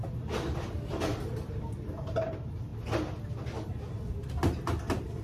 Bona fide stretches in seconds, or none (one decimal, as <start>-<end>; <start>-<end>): 0.0-1.1; 2.1-5.2